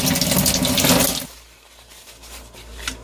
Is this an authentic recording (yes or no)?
yes